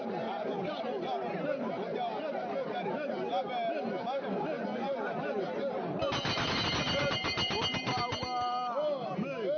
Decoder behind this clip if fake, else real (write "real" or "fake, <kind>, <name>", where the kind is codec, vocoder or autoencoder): real